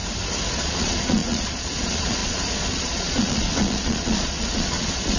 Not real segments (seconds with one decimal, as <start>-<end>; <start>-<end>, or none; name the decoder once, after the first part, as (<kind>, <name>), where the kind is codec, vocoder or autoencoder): 0.5-5.2 (vocoder, Vocos)